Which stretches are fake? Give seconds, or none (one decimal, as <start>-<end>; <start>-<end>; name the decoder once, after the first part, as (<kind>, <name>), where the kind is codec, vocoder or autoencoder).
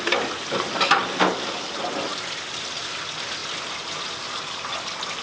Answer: 0.0-2.1 (vocoder, BigVGAN v2); 2.8-3.4; 4.2-5.2